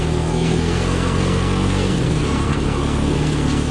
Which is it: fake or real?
fake